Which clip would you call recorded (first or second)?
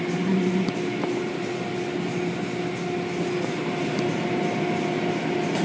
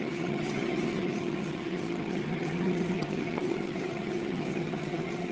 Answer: first